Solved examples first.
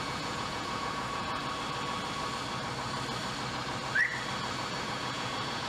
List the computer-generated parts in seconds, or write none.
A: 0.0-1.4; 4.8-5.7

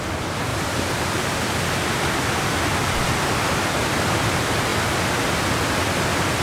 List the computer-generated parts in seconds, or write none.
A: 0.5-4.3

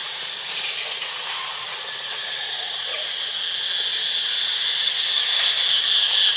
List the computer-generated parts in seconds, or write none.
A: 0.0-3.4; 3.9-5.1

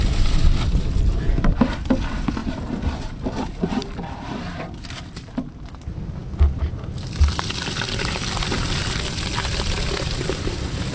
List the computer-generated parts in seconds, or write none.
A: 2.4-5.8

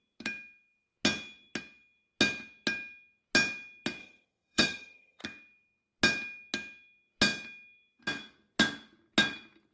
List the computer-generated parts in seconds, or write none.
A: 4.0-5.2

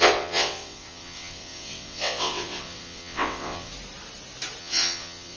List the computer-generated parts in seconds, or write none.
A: 0.0-3.7; 4.6-5.4